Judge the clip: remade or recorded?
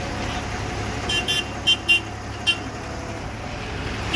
recorded